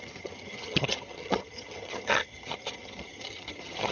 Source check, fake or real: fake